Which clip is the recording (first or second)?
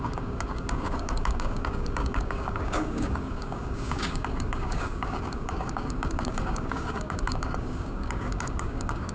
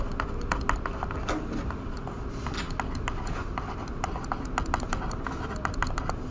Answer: second